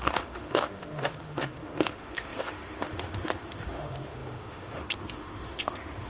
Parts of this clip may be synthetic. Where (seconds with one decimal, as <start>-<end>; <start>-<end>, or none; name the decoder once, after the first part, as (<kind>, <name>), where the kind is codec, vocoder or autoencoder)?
0.0-6.1 (autoencoder, DAC-VAE)